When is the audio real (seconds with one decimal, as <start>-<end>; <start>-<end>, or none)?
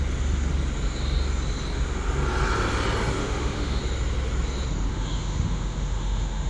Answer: 0.0-3.2; 3.8-4.9